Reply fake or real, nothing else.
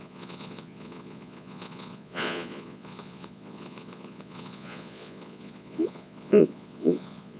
fake